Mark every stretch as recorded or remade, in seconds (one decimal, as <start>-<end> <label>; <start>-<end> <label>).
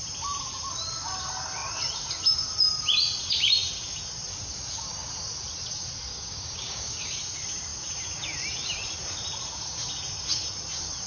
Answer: 0.0-4.3 recorded; 4.3-5.1 remade; 5.1-6.1 recorded; 6.1-7.2 remade; 7.2-11.1 recorded